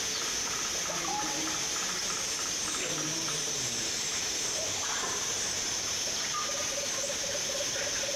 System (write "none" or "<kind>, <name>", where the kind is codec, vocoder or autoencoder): vocoder, BigVGAN v2